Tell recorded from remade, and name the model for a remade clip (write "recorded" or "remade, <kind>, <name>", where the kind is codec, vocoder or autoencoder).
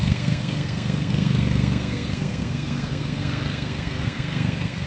remade, codec, SNAC